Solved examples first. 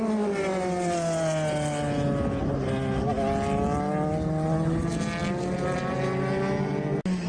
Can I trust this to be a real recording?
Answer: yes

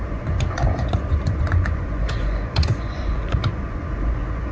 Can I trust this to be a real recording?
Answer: no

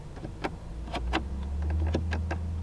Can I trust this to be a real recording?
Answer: yes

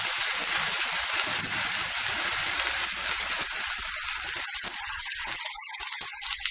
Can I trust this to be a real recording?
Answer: yes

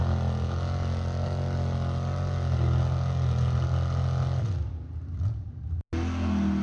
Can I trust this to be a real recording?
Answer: yes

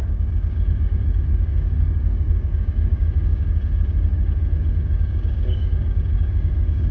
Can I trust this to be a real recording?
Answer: no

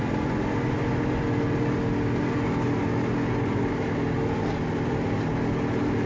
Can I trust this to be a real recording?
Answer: yes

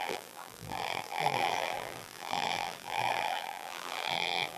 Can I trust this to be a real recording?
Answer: no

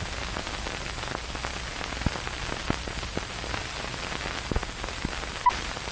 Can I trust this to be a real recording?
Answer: yes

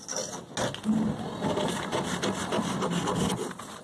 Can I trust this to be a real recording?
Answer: yes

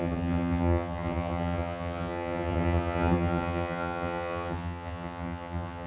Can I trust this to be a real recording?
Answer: no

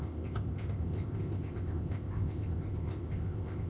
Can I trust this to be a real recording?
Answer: no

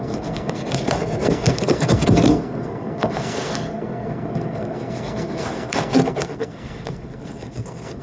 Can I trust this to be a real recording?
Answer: no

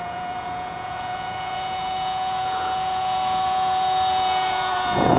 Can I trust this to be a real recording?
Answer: no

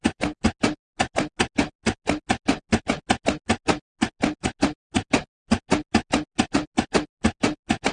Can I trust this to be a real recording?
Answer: yes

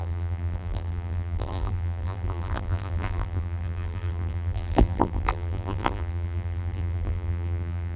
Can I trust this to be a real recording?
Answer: no